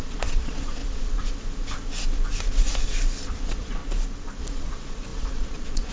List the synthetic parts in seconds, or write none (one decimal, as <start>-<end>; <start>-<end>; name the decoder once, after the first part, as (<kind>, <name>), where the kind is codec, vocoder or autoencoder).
0.0-0.8 (vocoder, Vocos); 3.3-3.8; 4.4-5.9